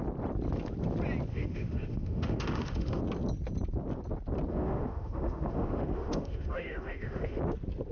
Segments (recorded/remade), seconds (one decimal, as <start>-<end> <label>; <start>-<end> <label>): 0.0-1.3 recorded; 1.3-3.0 remade; 3.0-4.5 recorded; 4.5-7.4 remade; 7.4-7.9 recorded